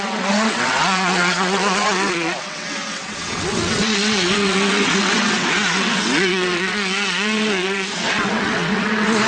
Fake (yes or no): yes